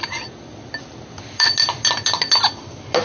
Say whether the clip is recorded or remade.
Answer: recorded